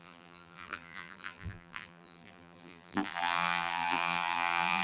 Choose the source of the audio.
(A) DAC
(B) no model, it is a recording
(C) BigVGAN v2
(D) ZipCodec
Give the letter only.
C